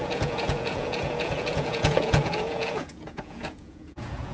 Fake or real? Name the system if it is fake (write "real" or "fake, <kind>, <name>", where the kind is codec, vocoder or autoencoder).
fake, vocoder, Vocos